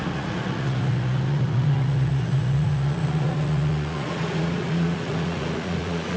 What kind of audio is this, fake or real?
fake